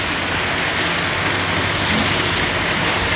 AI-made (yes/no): no